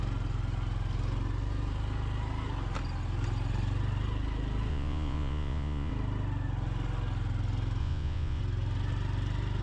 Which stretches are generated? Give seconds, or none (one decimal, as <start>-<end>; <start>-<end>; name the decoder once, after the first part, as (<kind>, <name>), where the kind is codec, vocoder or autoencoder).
4.7-5.9 (vocoder, Vocos); 7.8-8.4